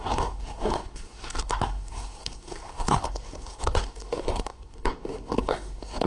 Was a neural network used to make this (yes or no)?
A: yes